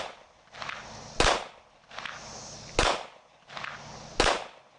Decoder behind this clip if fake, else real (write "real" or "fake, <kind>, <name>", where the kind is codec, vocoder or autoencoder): real